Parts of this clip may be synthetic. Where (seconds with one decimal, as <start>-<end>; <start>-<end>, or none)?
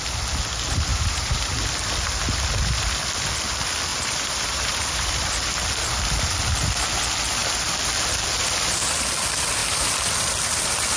0.9-1.5; 3.9-5.3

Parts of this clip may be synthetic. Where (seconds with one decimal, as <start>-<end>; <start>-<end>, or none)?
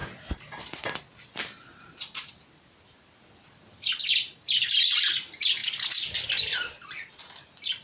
none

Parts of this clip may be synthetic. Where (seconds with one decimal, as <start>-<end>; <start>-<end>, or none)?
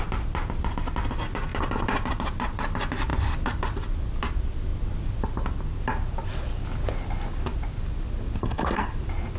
8.4-8.9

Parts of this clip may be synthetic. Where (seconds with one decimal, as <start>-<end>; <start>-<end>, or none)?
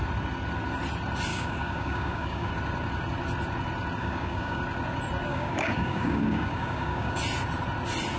1.3-2.5; 4.0-4.6; 5.3-7.2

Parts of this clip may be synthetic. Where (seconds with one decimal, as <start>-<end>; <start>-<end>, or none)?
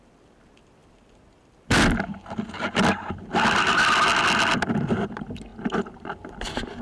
none